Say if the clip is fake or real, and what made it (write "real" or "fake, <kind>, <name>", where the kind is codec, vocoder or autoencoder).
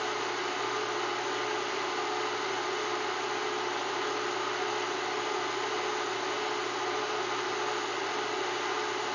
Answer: real